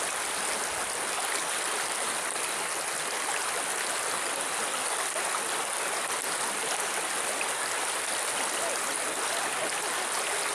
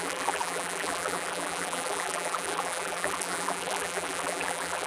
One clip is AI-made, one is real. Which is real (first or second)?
first